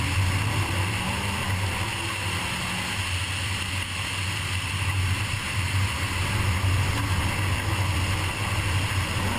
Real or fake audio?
real